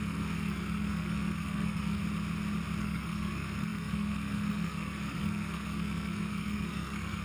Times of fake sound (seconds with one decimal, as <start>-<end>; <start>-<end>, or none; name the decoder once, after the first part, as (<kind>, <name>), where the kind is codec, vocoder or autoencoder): 0.0-2.0 (codec, SNAC); 2.8-7.2